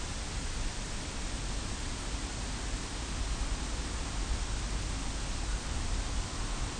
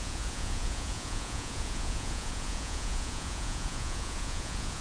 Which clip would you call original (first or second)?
first